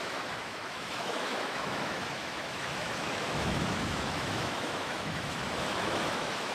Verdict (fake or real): fake